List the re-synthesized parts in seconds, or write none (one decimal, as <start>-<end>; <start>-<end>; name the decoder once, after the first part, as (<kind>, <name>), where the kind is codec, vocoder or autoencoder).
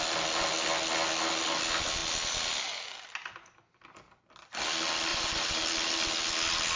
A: 5.1-5.6 (vocoder, BigVGAN v2)